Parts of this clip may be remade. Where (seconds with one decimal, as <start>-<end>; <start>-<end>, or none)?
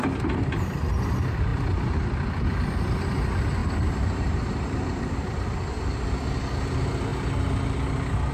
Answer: 3.6-5.1